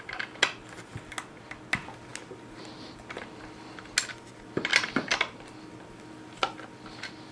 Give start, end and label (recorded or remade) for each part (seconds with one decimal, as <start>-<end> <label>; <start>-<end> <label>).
0.0-7.3 recorded